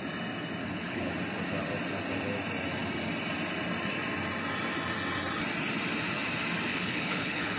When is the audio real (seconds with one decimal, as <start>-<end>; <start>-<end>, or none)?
0.0-0.6; 1.1-6.7